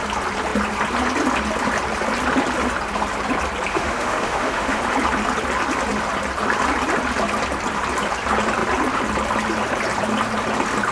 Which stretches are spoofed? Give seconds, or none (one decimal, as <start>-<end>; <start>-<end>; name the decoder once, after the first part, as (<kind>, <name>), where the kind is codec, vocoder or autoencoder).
3.7-4.8 (autoencoder, DAC-VAE)